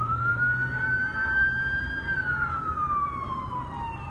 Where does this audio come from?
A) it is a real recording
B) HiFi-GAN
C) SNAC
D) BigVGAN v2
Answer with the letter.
D